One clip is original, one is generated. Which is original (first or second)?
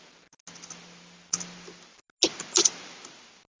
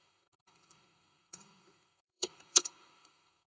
first